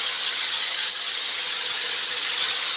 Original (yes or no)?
no